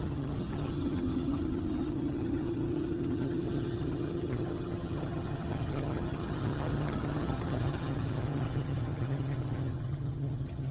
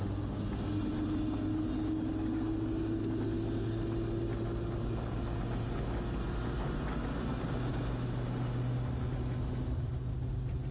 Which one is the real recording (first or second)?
second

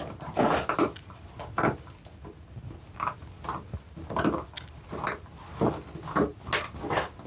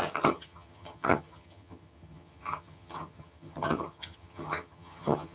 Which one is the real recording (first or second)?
first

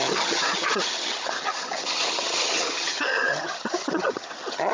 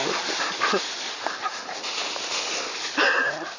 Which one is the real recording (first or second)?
second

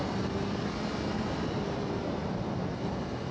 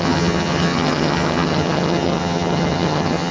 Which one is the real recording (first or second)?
first